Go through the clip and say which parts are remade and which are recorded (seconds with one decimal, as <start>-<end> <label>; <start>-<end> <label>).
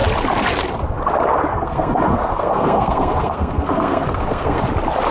0.0-1.5 recorded; 1.5-4.6 remade; 4.6-5.1 recorded